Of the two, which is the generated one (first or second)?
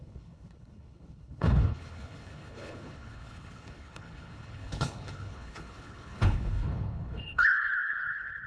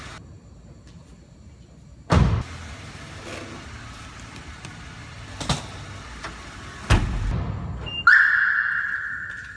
first